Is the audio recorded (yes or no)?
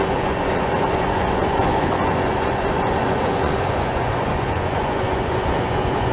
no